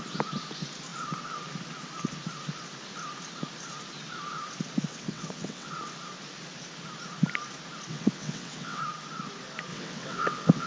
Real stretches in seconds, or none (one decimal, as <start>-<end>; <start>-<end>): 0.0-4.9; 5.7-7.9; 8.8-9.7